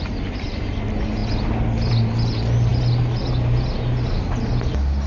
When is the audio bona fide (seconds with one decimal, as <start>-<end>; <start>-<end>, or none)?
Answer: 0.0-5.1